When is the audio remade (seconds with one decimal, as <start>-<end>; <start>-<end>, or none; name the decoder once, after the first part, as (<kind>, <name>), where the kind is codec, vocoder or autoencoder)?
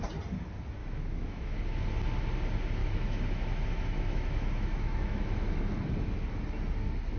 0.8-1.6 (autoencoder, DAC-VAE); 2.8-5.6